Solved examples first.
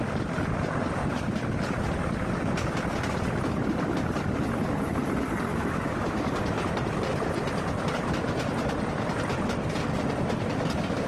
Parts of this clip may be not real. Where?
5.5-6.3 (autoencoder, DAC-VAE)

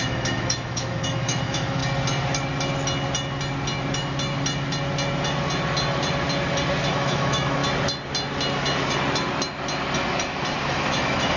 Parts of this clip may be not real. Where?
0.0-1.8 (autoencoder, DAC-VAE); 6.9-7.6; 10.7-11.4

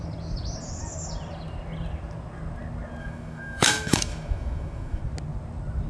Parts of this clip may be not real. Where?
3.0-5.0 (autoencoder, DAC-VAE)

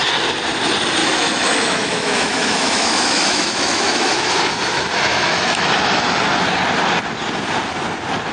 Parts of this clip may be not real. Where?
1.0-4.3 (autoencoder, DAC-VAE); 5.1-5.7

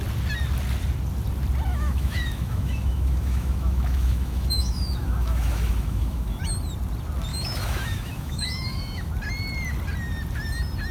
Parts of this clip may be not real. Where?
1.7-6.5 (autoencoder, DAC-VAE); 7.3-9.1

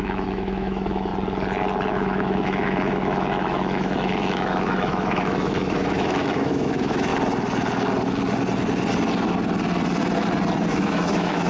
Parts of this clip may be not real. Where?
0.0-1.1 (autoencoder, DAC-VAE); 1.9-7.1; 10.7-11.5

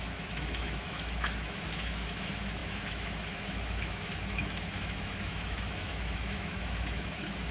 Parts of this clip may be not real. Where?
0.0-7.5 (autoencoder, DAC-VAE)

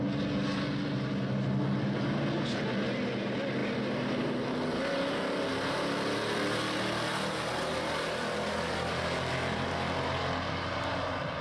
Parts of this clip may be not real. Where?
none